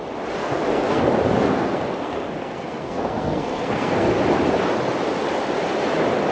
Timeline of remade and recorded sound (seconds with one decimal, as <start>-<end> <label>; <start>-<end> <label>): 0.0-0.4 recorded; 0.4-1.0 remade; 1.0-1.5 recorded; 1.5-4.1 remade; 4.1-6.3 recorded